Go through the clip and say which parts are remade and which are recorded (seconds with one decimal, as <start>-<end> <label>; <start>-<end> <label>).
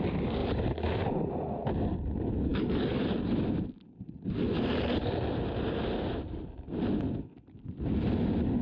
0.0-2.5 recorded; 2.5-3.0 remade; 3.0-8.6 recorded